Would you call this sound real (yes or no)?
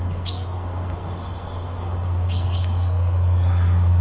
no